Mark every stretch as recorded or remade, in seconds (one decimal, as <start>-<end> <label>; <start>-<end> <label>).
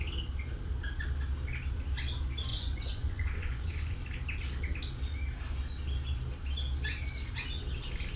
0.0-2.5 recorded; 2.5-4.0 remade; 4.0-8.2 recorded